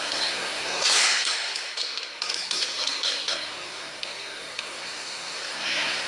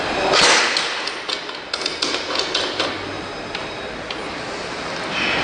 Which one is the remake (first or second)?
first